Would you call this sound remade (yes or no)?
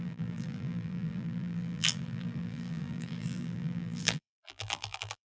yes